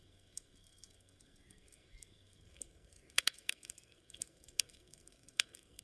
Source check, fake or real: fake